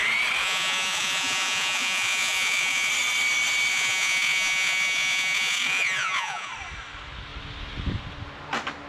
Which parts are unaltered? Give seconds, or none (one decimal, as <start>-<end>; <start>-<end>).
0.0-0.4; 2.9-3.7; 6.5-8.9